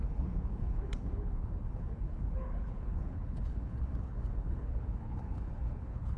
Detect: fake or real fake